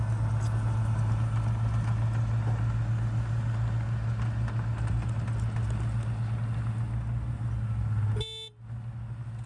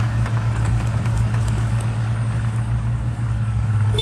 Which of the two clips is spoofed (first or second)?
second